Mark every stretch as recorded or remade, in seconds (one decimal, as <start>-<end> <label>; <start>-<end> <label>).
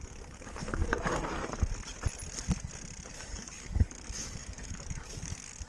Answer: 0.0-1.4 remade; 1.4-3.1 recorded; 3.1-5.7 remade